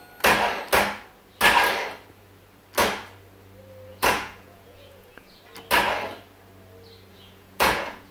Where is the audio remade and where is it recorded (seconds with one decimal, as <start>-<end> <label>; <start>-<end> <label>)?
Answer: 0.0-3.9 recorded; 3.9-5.4 remade; 5.4-7.1 recorded; 7.1-8.1 remade